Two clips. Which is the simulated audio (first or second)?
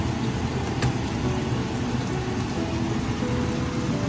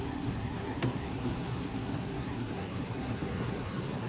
second